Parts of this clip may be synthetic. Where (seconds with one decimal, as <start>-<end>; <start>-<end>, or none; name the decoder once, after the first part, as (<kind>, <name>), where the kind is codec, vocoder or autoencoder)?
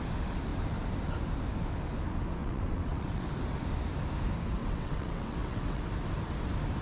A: 2.4-3.3 (vocoder, WaveNeXt); 4.6-5.8